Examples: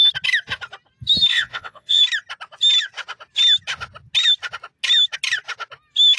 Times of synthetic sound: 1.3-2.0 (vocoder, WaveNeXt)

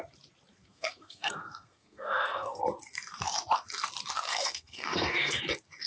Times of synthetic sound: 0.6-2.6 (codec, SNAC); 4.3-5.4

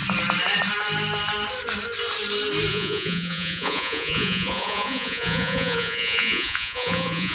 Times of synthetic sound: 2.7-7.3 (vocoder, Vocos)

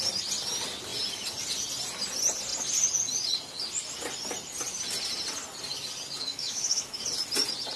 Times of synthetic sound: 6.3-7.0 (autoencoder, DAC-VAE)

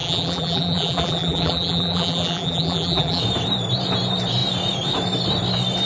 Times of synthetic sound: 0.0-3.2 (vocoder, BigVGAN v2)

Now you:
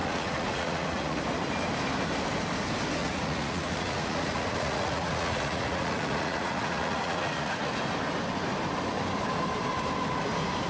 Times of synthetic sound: 0.0-1.2 (vocoder, Vocos); 3.0-7.7